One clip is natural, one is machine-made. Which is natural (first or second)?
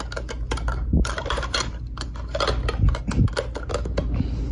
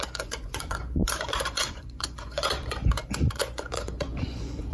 first